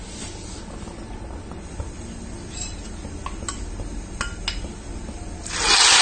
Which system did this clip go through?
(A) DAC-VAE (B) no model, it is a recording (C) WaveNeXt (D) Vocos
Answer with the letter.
B